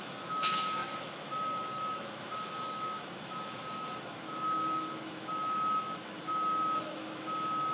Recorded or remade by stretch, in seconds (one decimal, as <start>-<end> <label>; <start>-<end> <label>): 0.0-7.7 remade

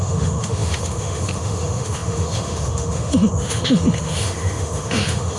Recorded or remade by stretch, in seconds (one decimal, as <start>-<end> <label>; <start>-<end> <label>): 0.0-5.4 remade

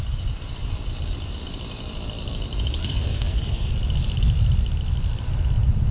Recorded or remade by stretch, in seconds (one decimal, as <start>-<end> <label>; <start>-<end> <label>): 0.0-2.8 recorded; 2.8-3.7 remade; 3.7-5.9 recorded

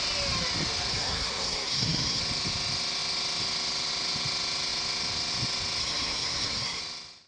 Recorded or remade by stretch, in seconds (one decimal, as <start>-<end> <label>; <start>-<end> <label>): 0.0-0.9 recorded; 0.9-2.2 remade; 2.2-5.8 recorded; 5.8-6.8 remade; 6.8-7.3 recorded

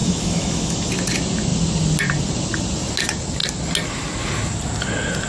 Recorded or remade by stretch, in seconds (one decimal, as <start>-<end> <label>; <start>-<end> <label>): 0.0-0.9 remade; 0.9-5.3 recorded

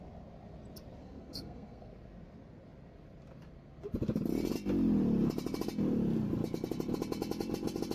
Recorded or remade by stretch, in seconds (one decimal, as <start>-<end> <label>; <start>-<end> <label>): 0.0-1.0 recorded; 1.0-1.9 remade; 1.9-7.9 recorded

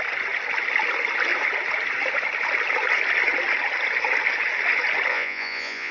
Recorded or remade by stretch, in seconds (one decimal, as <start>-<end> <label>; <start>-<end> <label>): 0.0-5.1 recorded; 5.1-5.9 remade